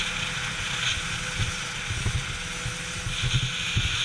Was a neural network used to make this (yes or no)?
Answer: no